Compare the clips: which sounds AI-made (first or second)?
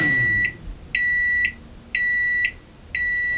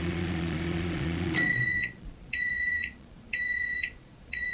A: second